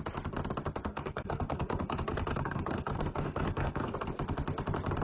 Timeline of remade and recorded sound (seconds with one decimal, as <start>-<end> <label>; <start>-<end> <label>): 0.0-0.9 recorded; 0.9-3.9 remade; 3.9-5.0 recorded